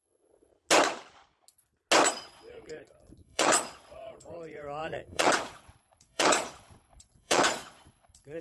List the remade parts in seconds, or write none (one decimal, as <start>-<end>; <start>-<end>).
0.0-0.5; 2.1-8.4